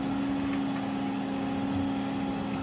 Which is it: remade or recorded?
recorded